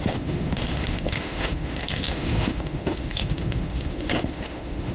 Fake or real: fake